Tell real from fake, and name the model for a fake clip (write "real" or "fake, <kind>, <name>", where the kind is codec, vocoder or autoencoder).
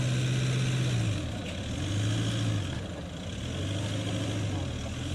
real